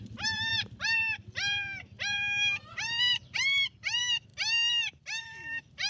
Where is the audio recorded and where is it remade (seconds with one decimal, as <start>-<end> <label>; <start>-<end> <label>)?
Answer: 0.0-4.3 remade; 4.3-5.2 recorded; 5.2-5.9 remade